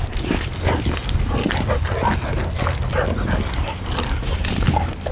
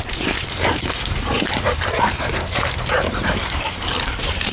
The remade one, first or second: second